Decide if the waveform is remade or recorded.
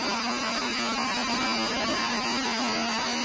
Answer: recorded